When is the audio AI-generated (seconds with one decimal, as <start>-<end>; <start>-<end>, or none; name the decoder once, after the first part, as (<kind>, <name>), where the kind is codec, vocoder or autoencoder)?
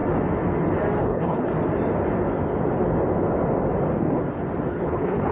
1.0-1.5 (codec, HILCodec); 4.7-5.3